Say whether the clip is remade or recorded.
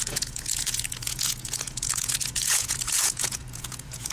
remade